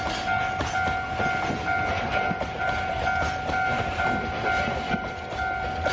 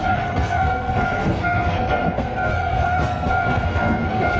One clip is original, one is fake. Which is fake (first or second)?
second